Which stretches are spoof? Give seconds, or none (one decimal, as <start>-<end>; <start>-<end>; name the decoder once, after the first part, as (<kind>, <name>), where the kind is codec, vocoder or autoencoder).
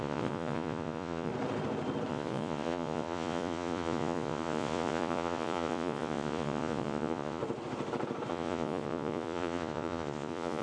0.0-1.3 (vocoder, Vocos); 2.1-7.4; 8.3-10.6